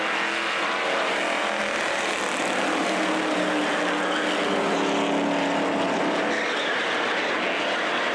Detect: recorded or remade recorded